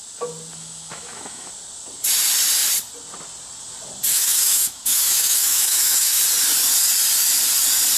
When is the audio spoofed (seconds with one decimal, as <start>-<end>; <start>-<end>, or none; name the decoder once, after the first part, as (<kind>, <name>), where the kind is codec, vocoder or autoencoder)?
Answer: 0.5-1.5 (autoencoder, DAC-VAE); 4.1-6.2